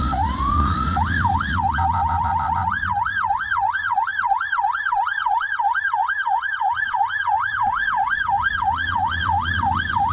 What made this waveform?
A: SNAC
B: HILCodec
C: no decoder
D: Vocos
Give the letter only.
D